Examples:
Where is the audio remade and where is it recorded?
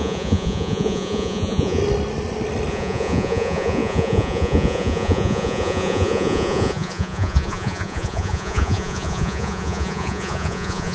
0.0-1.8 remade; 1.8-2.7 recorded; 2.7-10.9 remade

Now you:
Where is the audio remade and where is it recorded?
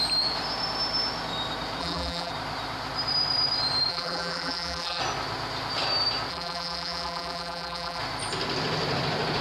0.0-1.8 recorded; 1.8-2.3 remade; 2.3-3.9 recorded; 3.9-5.0 remade; 5.0-6.3 recorded; 6.3-8.0 remade; 8.0-9.4 recorded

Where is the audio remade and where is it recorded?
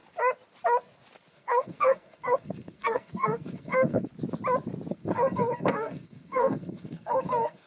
0.0-1.3 recorded; 1.3-4.1 remade; 4.1-4.9 recorded; 4.9-7.7 remade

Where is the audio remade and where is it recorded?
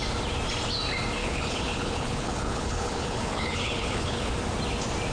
0.0-1.2 recorded; 1.2-4.3 remade; 4.3-5.1 recorded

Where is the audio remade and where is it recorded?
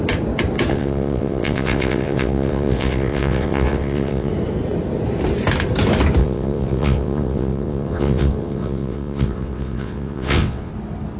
0.0-0.7 recorded; 0.7-4.3 remade; 4.3-6.2 recorded; 6.2-10.7 remade; 10.7-11.2 recorded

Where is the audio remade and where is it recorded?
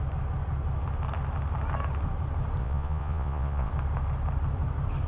0.0-2.6 recorded; 2.6-3.7 remade; 3.7-5.1 recorded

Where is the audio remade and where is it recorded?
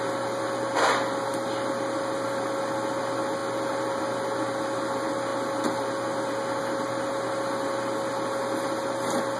0.0-9.4 recorded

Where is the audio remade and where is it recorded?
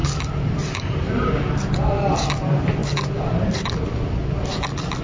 0.0-1.9 remade; 1.9-5.0 recorded